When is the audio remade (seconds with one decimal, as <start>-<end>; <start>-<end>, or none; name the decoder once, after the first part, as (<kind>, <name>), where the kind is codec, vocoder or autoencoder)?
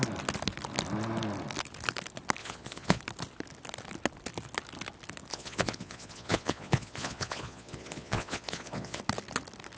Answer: 2.4-3.0 (vocoder, Vocos); 5.3-9.0